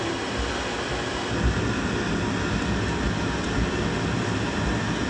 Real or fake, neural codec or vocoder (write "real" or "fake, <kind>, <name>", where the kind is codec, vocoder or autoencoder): real